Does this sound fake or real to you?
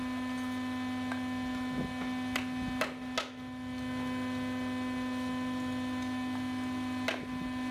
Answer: real